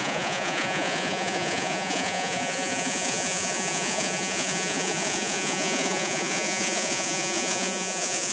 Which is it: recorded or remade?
remade